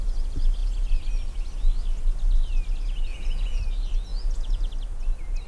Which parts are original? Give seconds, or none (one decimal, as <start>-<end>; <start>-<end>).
0.0-3.1; 3.6-4.1; 4.7-5.5